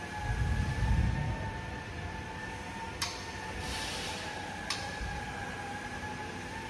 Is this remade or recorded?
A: recorded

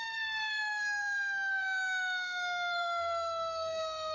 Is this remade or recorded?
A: remade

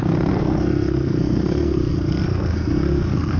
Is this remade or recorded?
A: remade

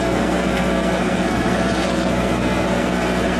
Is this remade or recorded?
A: remade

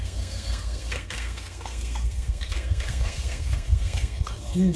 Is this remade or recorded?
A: remade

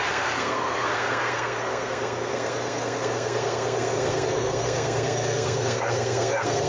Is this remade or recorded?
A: remade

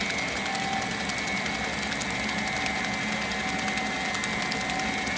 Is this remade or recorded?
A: recorded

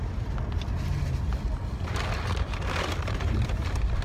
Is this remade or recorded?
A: recorded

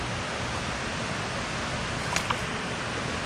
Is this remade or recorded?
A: recorded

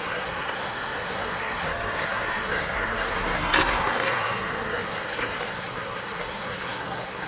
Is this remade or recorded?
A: remade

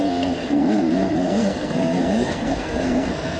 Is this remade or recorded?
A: remade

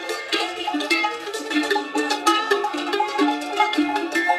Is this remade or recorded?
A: remade